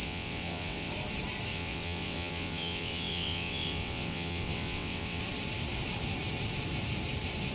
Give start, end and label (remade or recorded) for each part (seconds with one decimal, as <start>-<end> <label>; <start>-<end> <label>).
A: 0.0-0.9 remade; 0.9-1.5 recorded; 1.5-5.2 remade; 5.2-7.5 recorded